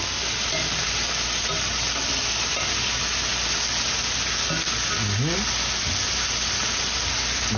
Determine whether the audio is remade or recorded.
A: recorded